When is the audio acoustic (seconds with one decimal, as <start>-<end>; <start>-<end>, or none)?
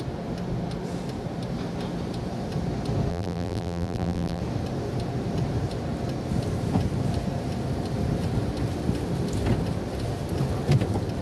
0.0-3.1; 4.4-11.2